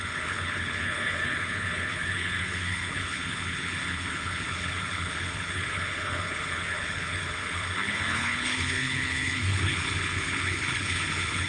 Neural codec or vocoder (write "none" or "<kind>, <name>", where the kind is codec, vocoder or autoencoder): codec, HILCodec